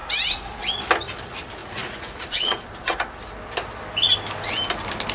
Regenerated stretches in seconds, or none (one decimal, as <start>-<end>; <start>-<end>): 1.6-2.6